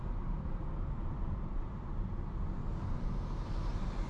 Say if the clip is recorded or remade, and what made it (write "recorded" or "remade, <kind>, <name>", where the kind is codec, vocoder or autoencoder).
recorded